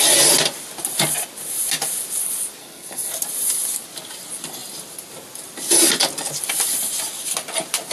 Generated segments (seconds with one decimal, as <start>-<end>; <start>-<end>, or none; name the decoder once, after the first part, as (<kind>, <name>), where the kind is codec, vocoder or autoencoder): 2.6-3.1 (codec, SNAC)